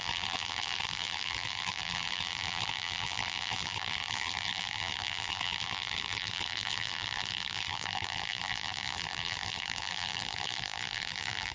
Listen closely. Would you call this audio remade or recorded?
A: remade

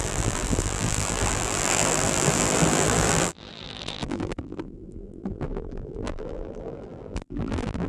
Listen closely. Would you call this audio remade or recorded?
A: remade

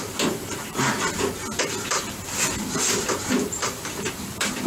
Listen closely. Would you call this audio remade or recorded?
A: remade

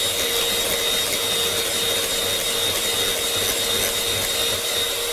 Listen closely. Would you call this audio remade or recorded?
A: recorded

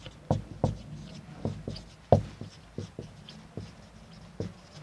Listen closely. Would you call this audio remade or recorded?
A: recorded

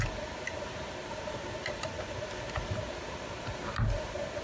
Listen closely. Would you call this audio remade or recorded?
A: remade